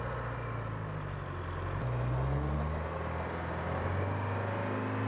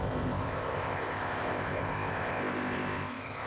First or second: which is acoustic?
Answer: first